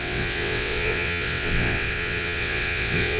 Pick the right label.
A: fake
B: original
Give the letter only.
A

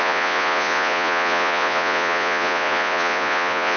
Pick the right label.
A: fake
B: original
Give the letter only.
A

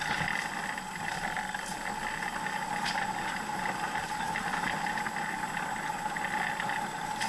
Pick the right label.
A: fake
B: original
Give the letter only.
B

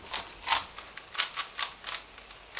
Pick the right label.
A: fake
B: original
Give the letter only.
B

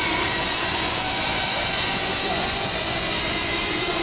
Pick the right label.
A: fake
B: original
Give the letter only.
A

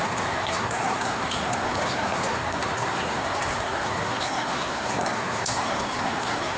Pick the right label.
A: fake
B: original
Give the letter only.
A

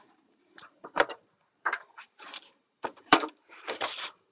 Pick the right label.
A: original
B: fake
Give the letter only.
B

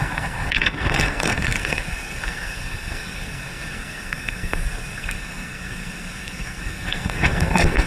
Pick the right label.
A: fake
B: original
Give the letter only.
A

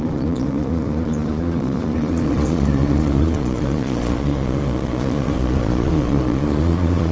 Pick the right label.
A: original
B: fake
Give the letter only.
B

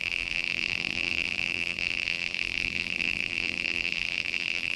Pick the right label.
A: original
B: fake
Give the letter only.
B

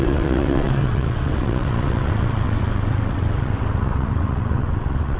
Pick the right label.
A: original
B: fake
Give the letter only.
B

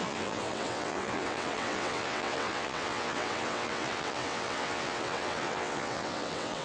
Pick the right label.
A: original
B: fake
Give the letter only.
B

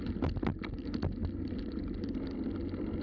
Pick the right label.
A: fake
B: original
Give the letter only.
B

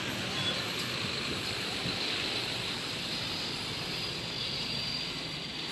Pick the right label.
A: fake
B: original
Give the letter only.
A